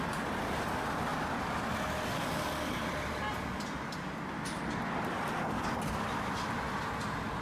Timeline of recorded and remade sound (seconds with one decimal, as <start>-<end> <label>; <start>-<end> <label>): 0.0-7.4 recorded